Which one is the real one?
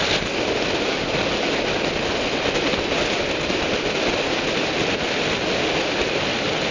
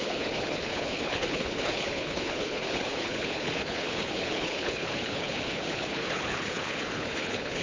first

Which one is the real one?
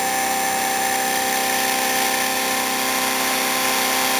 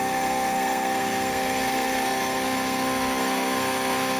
first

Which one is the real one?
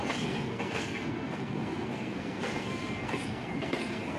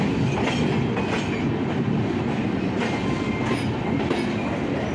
second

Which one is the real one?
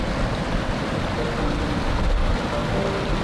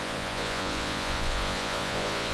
first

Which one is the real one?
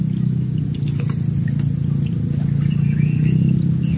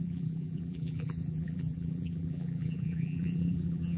first